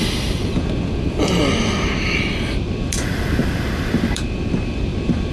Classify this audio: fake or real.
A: fake